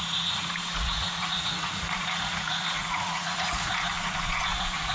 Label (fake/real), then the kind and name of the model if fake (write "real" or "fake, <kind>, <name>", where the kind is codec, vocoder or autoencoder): fake, vocoder, Vocos